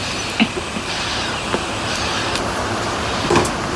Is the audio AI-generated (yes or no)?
no